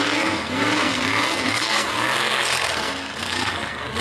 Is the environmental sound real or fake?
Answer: fake